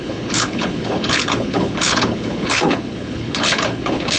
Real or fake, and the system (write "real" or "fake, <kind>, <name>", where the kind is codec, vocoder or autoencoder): fake, codec, HILCodec